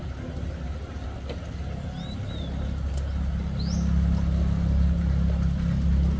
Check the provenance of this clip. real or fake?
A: real